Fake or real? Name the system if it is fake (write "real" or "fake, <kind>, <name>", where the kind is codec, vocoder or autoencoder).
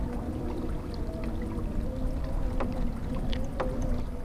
fake, vocoder, BigVGAN v2